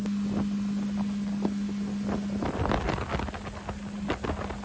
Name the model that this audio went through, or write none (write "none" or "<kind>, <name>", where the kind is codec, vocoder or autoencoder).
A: none